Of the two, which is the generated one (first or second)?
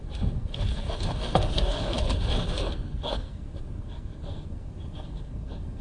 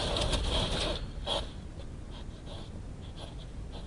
first